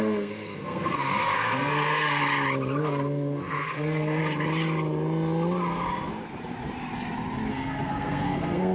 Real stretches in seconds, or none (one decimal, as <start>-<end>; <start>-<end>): 2.2-2.8; 4.2-7.5